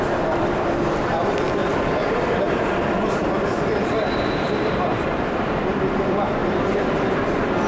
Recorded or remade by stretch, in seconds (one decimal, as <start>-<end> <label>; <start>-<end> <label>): 0.0-7.7 remade

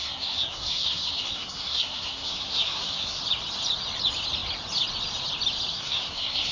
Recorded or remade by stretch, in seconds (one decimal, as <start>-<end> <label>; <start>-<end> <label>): 0.0-3.2 remade; 3.2-5.7 recorded; 5.7-6.5 remade

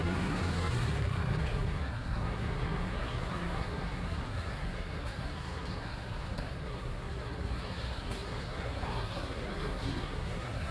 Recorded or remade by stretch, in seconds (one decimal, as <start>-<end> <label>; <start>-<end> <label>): 0.0-10.7 remade

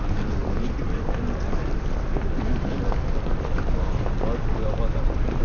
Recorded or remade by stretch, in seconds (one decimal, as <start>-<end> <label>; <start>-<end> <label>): 0.0-5.4 recorded

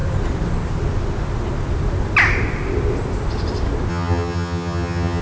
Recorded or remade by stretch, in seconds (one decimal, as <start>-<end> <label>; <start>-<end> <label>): 0.0-3.9 recorded; 3.9-5.2 remade

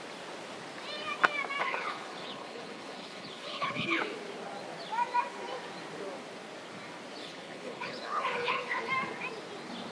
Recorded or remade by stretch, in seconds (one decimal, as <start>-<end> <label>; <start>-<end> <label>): 0.0-1.6 recorded; 1.6-4.0 remade; 4.0-7.2 recorded; 7.2-8.9 remade; 8.9-9.9 recorded

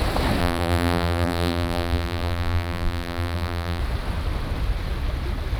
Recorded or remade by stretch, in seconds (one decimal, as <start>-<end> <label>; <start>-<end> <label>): 0.0-0.4 recorded; 0.4-3.8 remade; 3.8-5.6 recorded

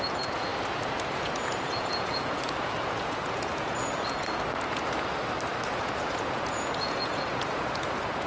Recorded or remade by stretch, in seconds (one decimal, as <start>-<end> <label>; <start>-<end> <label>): 0.0-0.5 remade; 0.5-1.1 recorded; 1.1-5.2 remade; 5.2-5.8 recorded; 5.8-8.3 remade